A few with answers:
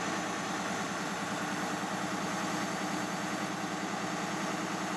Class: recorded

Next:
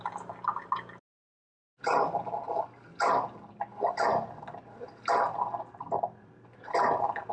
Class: recorded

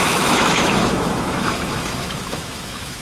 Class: remade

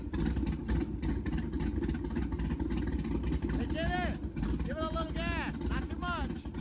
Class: recorded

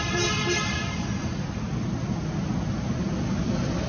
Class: recorded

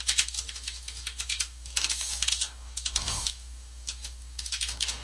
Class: remade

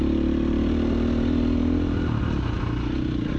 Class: recorded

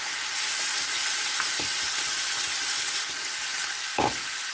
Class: recorded